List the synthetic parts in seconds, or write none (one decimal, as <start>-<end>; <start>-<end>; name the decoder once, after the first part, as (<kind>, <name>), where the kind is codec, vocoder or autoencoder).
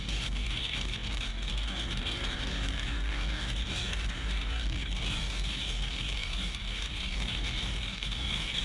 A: 0.0-8.6 (codec, DAC)